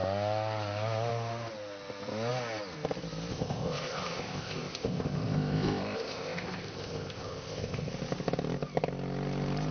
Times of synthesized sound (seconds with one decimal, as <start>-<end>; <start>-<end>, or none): 3.3-7.9